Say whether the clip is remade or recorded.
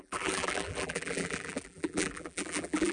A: remade